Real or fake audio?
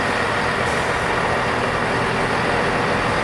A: real